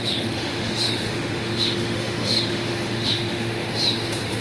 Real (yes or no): no